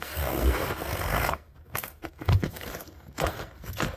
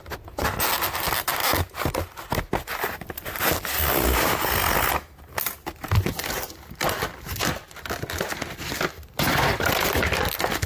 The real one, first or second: second